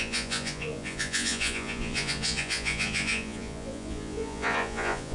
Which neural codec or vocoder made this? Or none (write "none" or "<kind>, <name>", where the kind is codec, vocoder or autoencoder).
vocoder, Vocos